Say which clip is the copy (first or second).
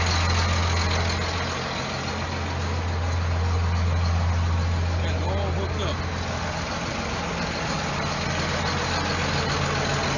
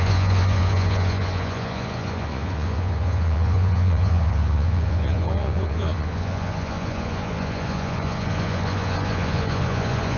second